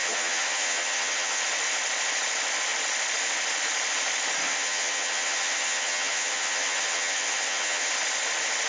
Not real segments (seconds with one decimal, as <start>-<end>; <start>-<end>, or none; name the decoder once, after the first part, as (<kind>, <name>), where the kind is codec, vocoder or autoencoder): 0.0-1.4 (vocoder, HiFi-GAN); 4.4-7.9

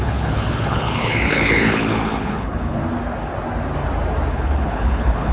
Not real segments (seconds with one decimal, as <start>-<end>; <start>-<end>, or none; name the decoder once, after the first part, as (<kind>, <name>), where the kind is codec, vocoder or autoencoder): 0.0-2.8 (codec, HILCodec); 4.3-5.3

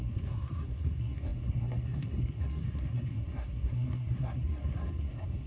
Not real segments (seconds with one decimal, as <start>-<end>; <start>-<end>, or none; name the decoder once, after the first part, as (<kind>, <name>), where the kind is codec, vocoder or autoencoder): 0.0-5.5 (codec, SNAC)

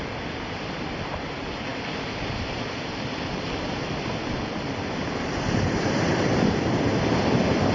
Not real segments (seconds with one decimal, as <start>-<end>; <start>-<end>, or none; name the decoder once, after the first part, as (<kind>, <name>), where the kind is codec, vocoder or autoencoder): none

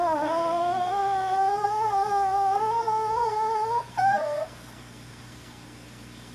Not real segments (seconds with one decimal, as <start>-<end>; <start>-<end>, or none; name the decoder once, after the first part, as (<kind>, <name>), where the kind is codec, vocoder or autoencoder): 0.0-6.3 (codec, SNAC)

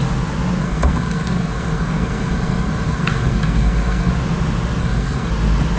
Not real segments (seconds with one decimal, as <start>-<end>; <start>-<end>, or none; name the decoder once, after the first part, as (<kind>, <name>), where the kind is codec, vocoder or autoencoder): 0.6-4.1 (codec, SNAC); 4.8-5.3

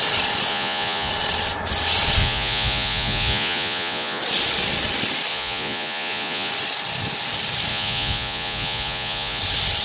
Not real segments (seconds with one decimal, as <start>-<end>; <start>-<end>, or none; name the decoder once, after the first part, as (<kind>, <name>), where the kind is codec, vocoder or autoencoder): 0.5-1.1 (vocoder, Vocos); 2.2-4.2; 5.3-6.5; 7.7-9.4